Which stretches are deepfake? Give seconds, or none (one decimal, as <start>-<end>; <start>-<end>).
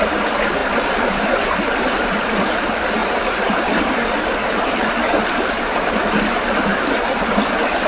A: 0.6-2.4